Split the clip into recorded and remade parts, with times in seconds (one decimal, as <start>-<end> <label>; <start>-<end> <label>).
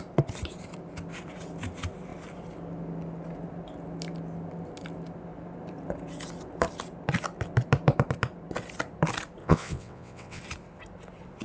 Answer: 0.0-9.4 recorded; 9.4-10.4 remade; 10.4-11.4 recorded